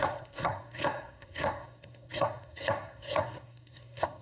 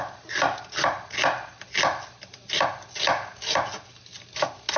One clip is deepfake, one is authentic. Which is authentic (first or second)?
second